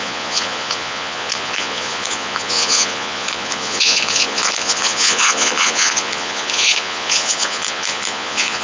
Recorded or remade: remade